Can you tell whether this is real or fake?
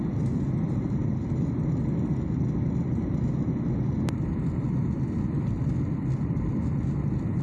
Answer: fake